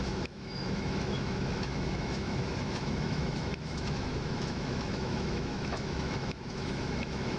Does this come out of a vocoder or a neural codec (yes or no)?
yes